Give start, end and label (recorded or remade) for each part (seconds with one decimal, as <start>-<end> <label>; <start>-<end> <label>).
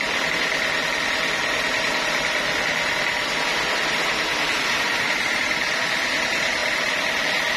0.0-7.6 recorded